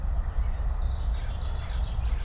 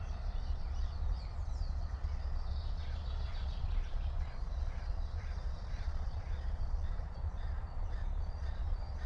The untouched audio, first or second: first